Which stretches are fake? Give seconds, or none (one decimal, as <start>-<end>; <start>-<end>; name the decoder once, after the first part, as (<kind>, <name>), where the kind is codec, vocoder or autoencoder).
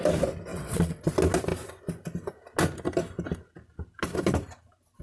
0.5-1.1 (vocoder, WaveNeXt)